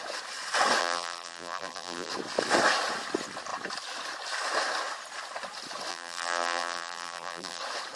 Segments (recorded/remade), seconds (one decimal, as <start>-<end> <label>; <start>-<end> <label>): 0.0-0.8 recorded; 0.8-2.1 remade; 2.1-5.9 recorded; 5.9-7.6 remade; 7.6-8.0 recorded